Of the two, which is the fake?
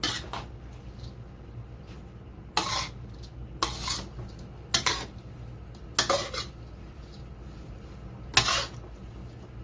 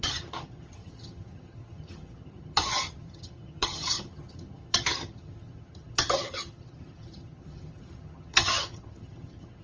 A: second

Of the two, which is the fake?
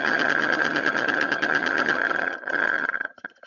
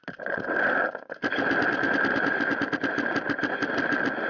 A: first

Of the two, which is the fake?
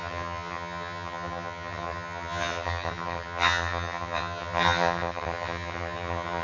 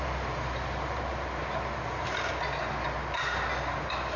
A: first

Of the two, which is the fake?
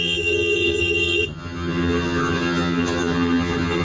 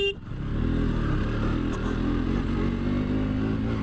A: first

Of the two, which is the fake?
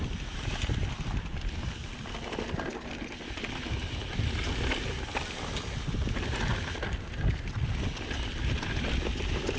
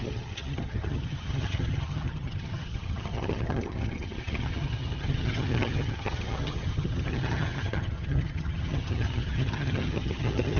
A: second